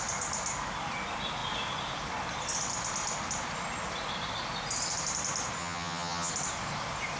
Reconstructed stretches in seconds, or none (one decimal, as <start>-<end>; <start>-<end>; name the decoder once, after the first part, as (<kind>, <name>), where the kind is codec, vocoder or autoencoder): 5.6-6.3 (vocoder, HiFi-GAN)